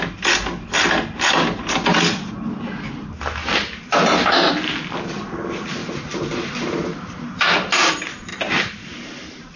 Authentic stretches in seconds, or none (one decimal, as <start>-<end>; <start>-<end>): 0.0-3.4; 4.5-5.8; 7.9-8.3